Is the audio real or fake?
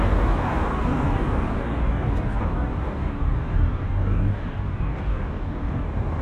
fake